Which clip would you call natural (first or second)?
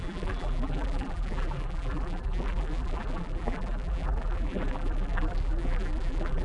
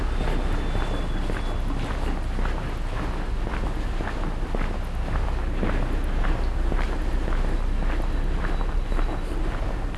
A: second